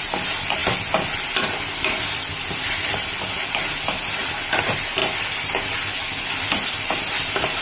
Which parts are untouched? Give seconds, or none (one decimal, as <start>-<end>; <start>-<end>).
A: 0.0-7.6